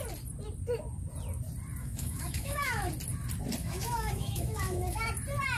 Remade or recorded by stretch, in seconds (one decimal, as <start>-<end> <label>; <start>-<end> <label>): 0.0-1.8 recorded; 1.8-2.9 remade; 2.9-3.6 recorded; 3.6-5.1 remade; 5.1-5.6 recorded